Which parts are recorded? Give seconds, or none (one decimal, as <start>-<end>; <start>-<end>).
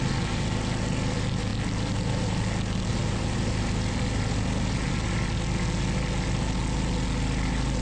0.0-7.8